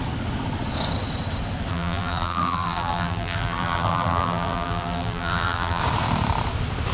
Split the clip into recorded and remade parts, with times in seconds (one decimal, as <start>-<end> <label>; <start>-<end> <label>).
0.0-1.7 recorded; 1.7-5.8 remade; 5.8-6.9 recorded